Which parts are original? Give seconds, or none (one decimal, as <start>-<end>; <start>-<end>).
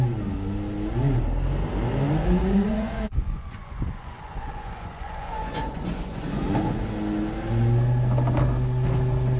0.0-2.2; 6.9-9.4